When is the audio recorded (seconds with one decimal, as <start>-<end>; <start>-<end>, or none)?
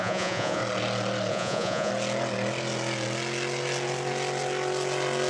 0.6-1.3; 1.9-5.3